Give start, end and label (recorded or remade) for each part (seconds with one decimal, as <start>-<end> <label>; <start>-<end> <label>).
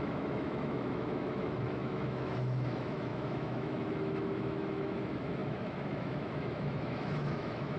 0.0-7.8 remade